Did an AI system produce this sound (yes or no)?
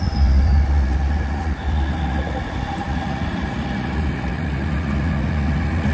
yes